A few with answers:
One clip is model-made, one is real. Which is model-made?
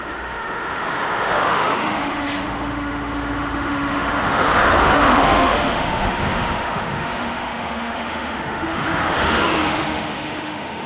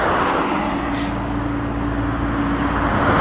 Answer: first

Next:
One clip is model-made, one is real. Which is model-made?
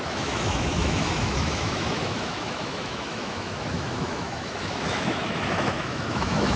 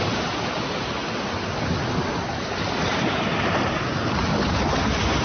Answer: first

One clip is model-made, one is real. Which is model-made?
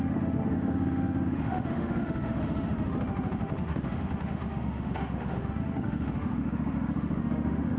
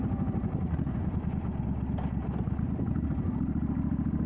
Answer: first